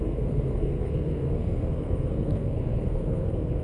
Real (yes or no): no